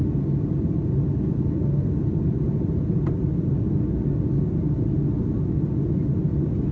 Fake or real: real